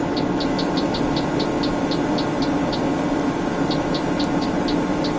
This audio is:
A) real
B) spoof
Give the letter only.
A